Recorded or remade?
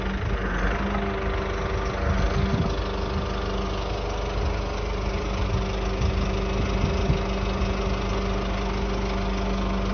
recorded